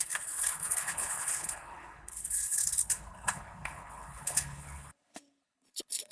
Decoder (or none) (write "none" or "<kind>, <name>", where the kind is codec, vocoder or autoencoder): codec, HILCodec